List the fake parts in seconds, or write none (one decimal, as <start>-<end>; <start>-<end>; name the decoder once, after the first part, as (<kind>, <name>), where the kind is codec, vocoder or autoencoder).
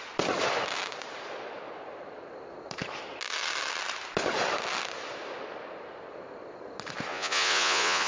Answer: 7.1-8.1 (vocoder, Vocos)